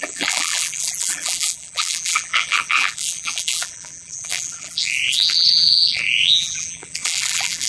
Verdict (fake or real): fake